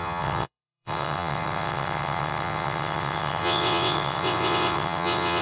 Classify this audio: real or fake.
fake